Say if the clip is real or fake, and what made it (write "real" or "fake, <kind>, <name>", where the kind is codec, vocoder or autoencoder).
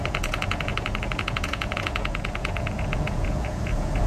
fake, vocoder, Vocos